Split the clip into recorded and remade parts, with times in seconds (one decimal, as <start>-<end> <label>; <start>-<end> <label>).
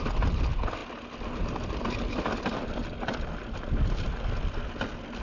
0.0-5.2 recorded